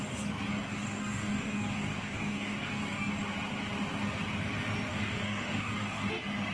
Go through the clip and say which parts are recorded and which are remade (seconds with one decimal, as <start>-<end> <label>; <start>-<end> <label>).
0.0-0.5 recorded; 0.5-3.1 remade; 3.1-4.9 recorded; 4.9-6.1 remade; 6.1-6.5 recorded